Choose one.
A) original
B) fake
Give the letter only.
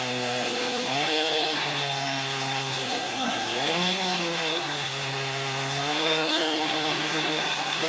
B